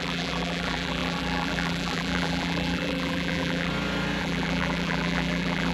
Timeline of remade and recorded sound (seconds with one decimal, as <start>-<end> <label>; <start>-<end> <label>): 0.0-3.7 remade; 3.7-4.2 recorded; 4.2-5.7 remade